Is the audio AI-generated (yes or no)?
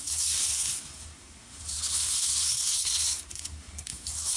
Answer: yes